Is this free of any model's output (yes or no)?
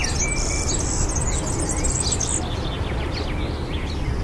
yes